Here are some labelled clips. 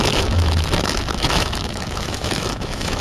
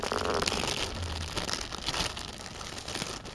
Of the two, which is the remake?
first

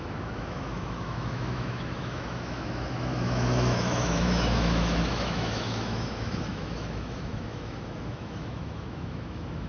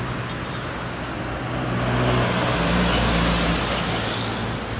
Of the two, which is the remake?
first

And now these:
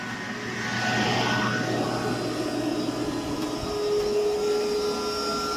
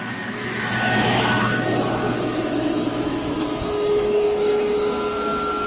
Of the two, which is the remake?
second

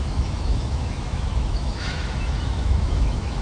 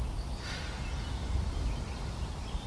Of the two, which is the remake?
first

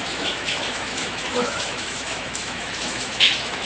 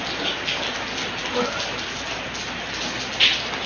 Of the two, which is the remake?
first